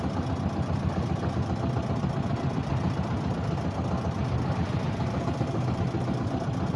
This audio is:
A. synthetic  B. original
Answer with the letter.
B